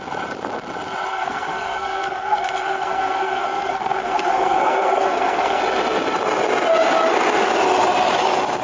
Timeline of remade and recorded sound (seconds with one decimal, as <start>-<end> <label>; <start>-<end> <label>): 0.0-1.1 recorded; 1.1-5.6 remade; 5.6-8.6 recorded